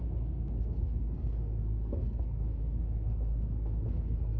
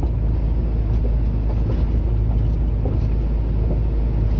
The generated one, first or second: first